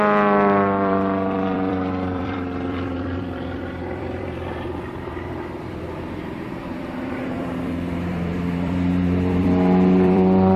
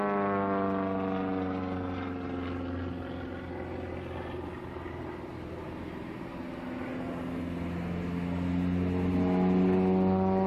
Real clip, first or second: second